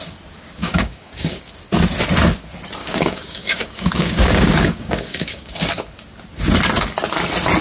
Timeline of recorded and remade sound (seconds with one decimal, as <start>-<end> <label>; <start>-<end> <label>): 0.0-0.6 recorded; 0.6-1.4 remade; 1.4-2.8 recorded; 2.8-5.7 remade; 5.7-7.6 recorded